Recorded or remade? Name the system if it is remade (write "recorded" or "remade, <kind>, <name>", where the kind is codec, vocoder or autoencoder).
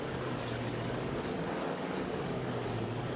remade, codec, DAC